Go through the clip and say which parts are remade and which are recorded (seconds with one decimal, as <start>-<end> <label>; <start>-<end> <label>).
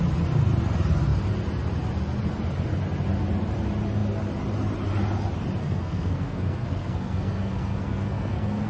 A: 0.0-5.6 recorded; 5.6-8.7 remade